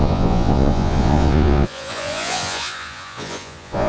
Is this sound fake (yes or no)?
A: yes